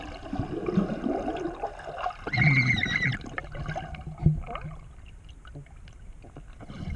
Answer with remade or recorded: recorded